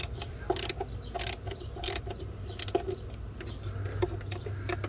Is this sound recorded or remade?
recorded